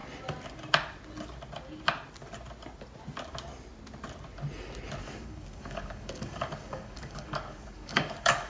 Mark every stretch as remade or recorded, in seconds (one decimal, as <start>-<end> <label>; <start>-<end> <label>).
0.0-5.0 recorded; 5.0-8.5 remade